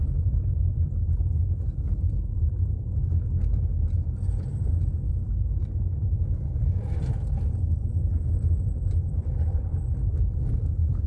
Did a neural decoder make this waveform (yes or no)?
yes